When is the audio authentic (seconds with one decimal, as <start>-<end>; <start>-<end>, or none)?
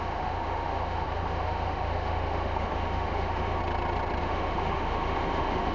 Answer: 3.6-4.2